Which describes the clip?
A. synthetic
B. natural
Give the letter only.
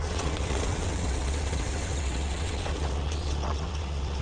A